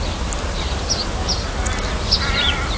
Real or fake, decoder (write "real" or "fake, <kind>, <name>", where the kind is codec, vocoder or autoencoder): real